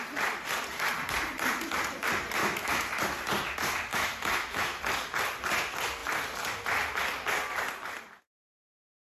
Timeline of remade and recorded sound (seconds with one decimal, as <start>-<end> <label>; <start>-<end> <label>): 0.0-2.4 recorded; 2.4-3.0 remade; 3.0-3.9 recorded; 3.9-4.8 remade; 4.8-9.2 recorded